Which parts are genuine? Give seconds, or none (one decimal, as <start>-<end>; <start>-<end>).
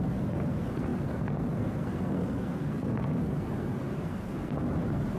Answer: none